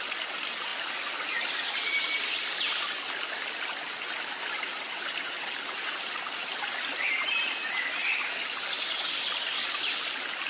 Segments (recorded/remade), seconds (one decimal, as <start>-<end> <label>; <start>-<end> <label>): 0.0-10.5 recorded